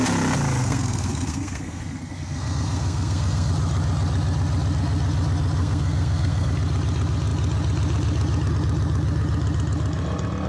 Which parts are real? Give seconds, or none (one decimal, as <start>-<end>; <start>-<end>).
0.0-0.6; 3.5-5.6; 6.5-10.5